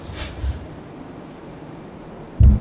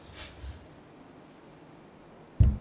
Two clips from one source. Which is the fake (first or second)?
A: first